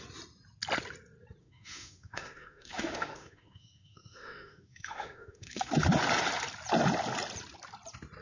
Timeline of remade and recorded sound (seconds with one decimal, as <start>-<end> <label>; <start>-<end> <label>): 0.0-1.4 recorded; 1.4-5.7 remade; 5.7-8.2 recorded